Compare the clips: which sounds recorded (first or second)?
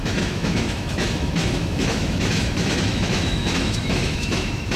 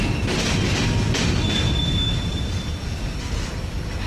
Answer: second